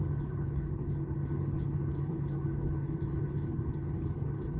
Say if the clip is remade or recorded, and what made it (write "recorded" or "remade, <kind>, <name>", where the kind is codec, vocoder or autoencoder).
remade, codec, HILCodec